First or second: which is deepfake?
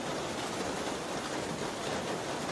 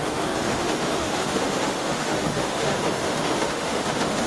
second